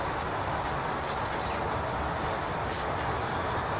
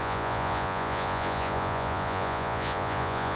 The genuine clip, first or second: first